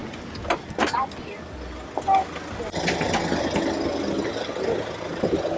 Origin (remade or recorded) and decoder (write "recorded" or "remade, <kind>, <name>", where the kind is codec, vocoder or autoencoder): recorded